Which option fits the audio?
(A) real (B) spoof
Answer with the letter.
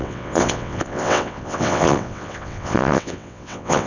B